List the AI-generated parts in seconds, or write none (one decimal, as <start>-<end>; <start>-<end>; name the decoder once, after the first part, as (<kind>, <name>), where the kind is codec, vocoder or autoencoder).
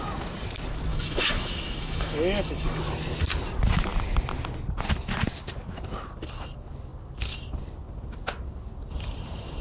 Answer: 0.9-2.8 (autoencoder, DAC-VAE)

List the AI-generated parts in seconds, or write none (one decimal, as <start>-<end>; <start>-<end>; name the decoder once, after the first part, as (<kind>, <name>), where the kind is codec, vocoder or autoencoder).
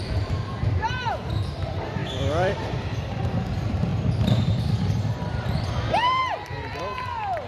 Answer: 0.0-6.2 (vocoder, BigVGAN v2); 6.8-7.5